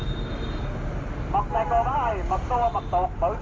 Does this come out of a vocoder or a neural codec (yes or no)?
no